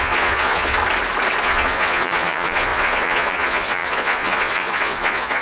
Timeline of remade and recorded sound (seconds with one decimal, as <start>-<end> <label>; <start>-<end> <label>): 0.0-0.8 remade; 0.8-1.4 recorded; 1.4-5.4 remade